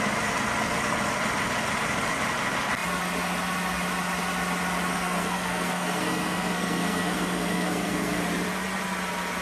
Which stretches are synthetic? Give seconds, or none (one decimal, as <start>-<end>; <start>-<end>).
4.9-8.2